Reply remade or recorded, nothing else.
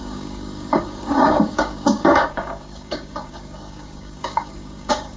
remade